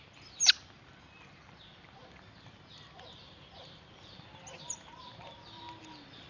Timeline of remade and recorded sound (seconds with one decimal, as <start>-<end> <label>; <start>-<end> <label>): 0.0-6.3 recorded